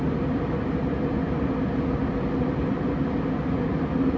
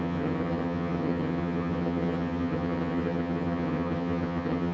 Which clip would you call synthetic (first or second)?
second